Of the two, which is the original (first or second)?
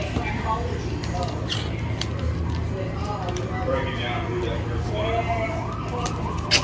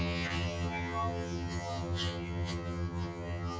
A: first